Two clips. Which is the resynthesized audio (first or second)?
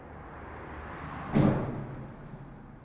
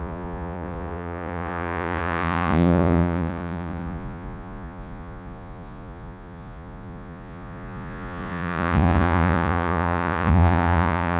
second